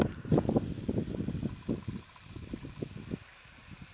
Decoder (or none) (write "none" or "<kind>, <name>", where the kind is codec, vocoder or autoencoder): none